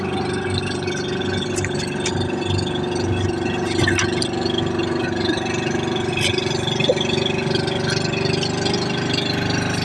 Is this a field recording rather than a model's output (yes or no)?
yes